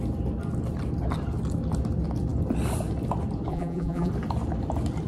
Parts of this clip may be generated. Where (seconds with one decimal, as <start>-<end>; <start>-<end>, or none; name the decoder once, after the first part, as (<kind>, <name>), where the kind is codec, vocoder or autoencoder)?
3.5-4.1 (vocoder, BigVGAN v2)